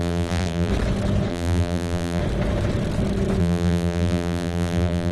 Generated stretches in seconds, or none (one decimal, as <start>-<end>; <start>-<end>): 0.0-0.7; 1.3-2.2; 3.4-5.1